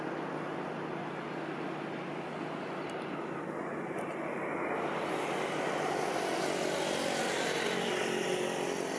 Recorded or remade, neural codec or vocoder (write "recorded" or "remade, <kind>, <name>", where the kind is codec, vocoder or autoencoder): recorded